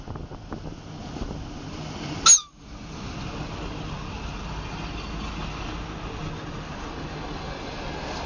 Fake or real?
real